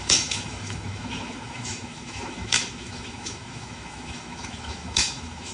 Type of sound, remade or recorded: remade